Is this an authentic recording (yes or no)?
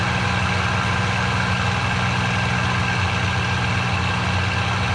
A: yes